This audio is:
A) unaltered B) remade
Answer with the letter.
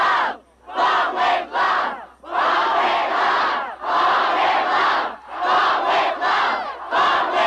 A